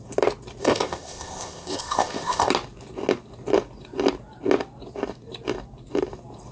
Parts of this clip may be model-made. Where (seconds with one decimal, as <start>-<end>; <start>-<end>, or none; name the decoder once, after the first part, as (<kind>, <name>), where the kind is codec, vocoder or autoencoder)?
0.6-2.5 (codec, ZipCodec)